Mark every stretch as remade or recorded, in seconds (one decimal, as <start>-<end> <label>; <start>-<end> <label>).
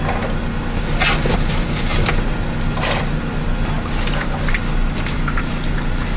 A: 0.0-6.2 recorded